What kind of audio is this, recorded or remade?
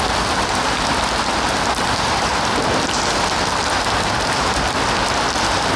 recorded